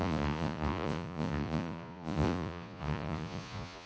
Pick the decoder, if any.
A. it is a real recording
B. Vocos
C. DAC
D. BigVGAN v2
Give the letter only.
B